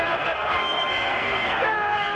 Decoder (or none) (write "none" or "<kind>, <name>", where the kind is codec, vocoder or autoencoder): codec, SNAC